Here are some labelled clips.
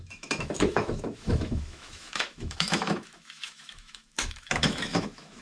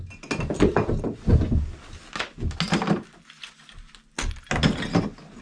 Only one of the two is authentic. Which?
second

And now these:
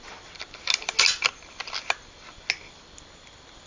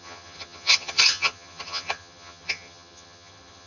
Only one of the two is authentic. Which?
first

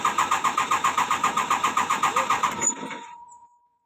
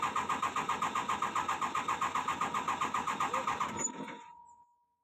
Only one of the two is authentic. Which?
second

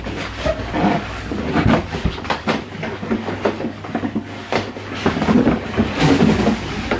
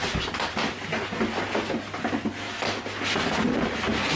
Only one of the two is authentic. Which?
second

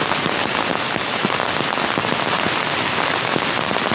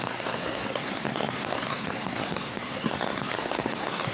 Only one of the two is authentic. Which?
first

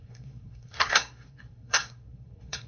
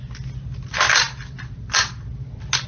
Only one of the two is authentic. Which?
second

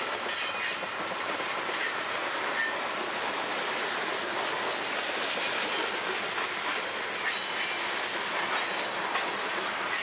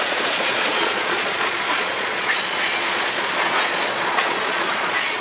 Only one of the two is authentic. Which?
first